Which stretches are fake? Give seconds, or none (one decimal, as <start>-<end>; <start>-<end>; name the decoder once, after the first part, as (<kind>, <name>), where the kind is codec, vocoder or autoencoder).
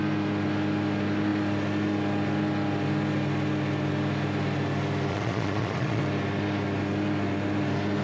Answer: 5.1-6.0 (vocoder, Vocos)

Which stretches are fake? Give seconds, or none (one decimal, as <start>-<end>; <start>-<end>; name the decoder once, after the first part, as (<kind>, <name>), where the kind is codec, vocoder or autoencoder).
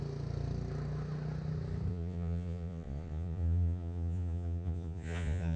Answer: 1.9-5.6 (vocoder, Vocos)